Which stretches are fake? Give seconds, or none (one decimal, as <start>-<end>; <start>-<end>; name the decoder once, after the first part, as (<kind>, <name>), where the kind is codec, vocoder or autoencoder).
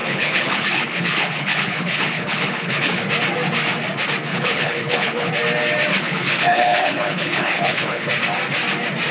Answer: 0.0-3.0 (codec, HILCodec); 4.3-5.3; 5.9-8.1